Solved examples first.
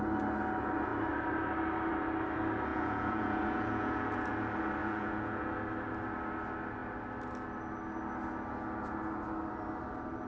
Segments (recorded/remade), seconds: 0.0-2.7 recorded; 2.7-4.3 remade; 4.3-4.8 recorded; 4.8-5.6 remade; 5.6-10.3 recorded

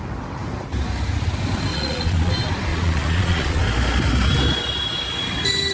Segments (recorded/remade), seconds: 0.0-1.7 recorded; 1.7-2.3 remade; 2.3-2.7 recorded; 2.7-3.6 remade; 3.6-5.7 recorded

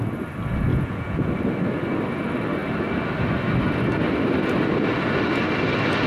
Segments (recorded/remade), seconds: 0.0-0.7 recorded; 0.7-1.3 remade; 1.3-6.1 recorded

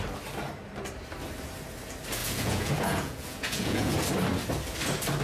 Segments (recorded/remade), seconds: 0.0-2.2 recorded; 2.2-3.9 remade; 3.9-5.2 recorded

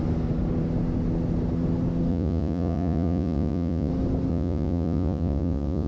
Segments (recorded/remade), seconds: 0.0-2.1 recorded; 2.1-3.9 remade; 3.9-4.3 recorded; 4.3-5.9 remade

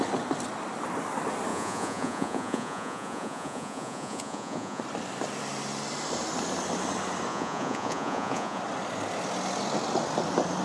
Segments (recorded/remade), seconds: 0.0-1.5 recorded; 1.5-4.8 remade; 4.8-7.3 recorded; 7.3-8.6 remade; 8.6-10.6 recorded

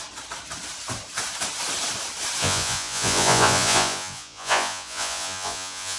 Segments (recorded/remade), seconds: 0.0-2.4 recorded; 2.4-6.0 remade